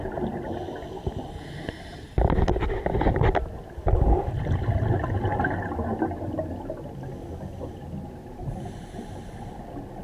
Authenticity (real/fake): real